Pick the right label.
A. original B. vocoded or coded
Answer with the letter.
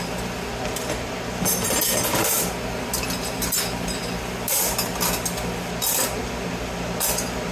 A